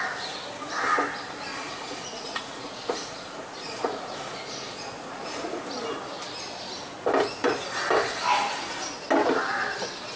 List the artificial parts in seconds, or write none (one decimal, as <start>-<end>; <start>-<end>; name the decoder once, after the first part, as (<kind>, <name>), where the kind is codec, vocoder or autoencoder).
1.5-5.6 (vocoder, Vocos)